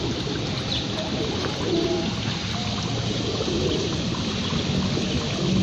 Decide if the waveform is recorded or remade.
recorded